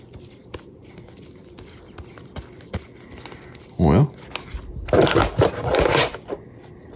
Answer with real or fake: real